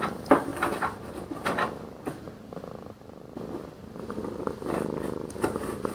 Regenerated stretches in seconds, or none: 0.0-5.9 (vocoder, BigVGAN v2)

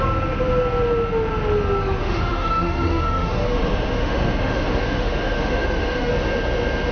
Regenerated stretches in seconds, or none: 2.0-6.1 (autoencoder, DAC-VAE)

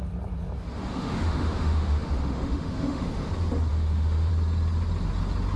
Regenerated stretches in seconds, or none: 0.9-3.3 (autoencoder, DAC-VAE); 3.7-4.3

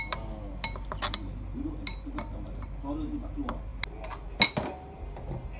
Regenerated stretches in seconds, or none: none

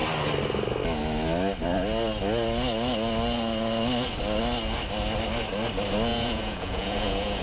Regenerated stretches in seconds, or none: 6.1-7.4 (vocoder, Vocos)

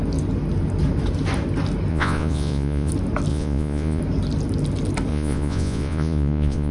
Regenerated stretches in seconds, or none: 1.9-2.9 (vocoder, Vocos); 3.3-4.0; 5.1-6.7

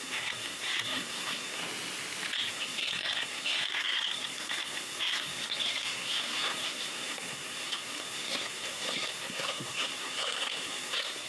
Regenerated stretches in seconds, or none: 0.0-1.6 (codec, SNAC); 2.5-11.3

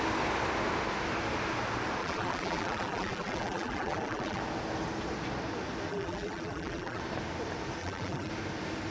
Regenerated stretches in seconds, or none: 2.0-4.4 (vocoder, BigVGAN v2); 5.9-7.0; 7.8-8.3